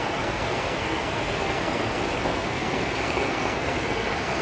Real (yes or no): no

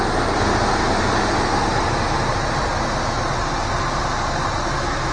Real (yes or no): yes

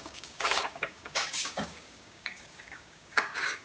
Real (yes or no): no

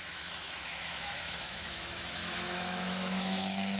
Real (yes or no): no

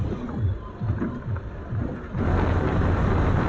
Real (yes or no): yes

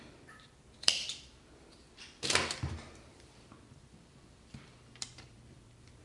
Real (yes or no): no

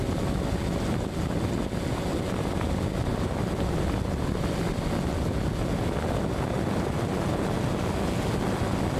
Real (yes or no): yes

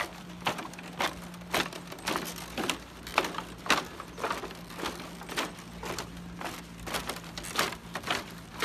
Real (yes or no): yes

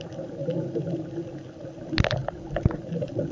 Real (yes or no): yes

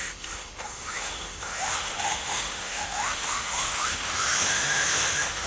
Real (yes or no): no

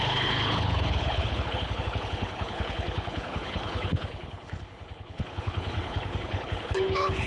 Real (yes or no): no